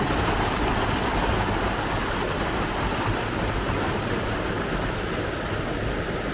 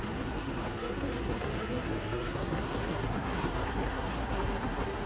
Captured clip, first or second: first